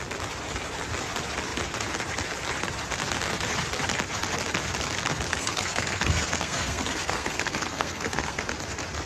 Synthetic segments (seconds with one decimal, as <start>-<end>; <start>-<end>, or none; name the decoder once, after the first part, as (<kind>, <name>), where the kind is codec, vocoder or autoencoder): 5.3-8.4 (codec, SNAC)